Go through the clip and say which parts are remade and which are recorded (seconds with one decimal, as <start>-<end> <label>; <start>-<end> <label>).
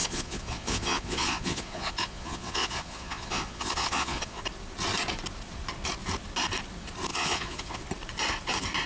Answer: 0.0-4.4 remade; 4.4-7.1 recorded; 7.1-7.8 remade; 7.8-8.9 recorded